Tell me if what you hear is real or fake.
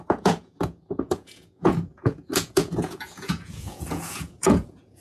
fake